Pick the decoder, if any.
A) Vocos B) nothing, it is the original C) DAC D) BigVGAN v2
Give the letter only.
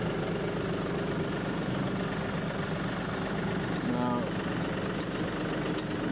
B